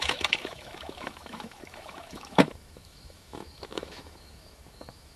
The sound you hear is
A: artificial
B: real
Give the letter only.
A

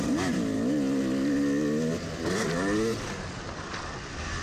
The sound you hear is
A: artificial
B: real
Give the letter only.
B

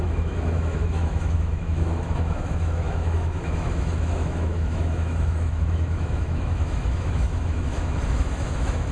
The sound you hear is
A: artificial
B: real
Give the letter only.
A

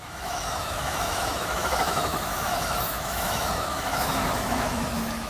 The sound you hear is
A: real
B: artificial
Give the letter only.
B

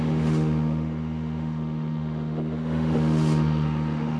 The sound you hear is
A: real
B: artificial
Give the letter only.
B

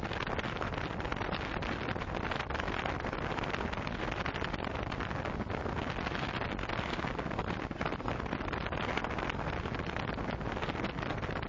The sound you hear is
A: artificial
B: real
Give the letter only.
B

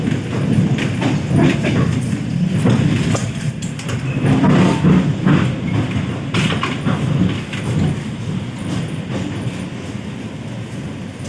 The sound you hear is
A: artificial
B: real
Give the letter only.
B